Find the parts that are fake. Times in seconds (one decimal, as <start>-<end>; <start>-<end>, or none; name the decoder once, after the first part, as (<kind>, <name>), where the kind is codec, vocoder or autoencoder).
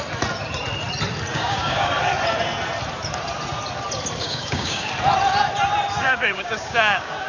1.3-1.9 (codec, DAC); 4.2-4.9; 6.0-7.3